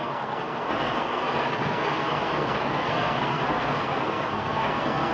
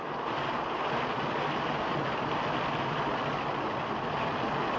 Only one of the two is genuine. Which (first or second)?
second